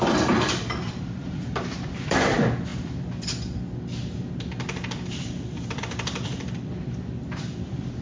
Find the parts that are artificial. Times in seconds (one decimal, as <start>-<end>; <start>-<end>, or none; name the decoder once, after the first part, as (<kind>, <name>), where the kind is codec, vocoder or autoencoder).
0.0-2.7 (vocoder, BigVGAN v2); 5.8-8.0